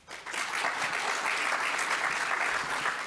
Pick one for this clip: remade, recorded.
recorded